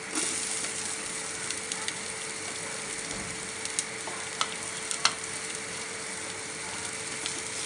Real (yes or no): yes